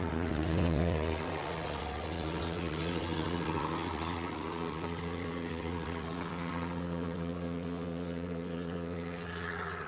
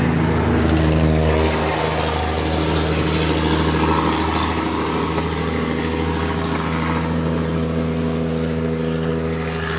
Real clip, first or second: second